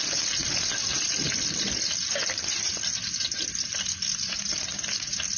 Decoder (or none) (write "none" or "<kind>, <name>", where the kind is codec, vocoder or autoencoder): none